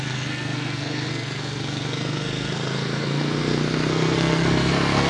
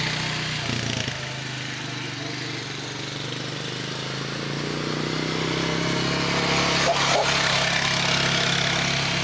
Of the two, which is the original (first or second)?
second